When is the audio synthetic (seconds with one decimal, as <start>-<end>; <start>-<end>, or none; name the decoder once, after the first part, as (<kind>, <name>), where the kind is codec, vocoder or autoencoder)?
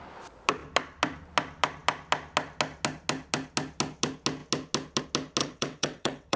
5.4-6.4 (vocoder, WaveNeXt)